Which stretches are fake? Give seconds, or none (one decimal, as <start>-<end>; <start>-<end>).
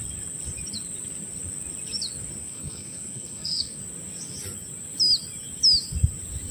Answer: 2.4-3.8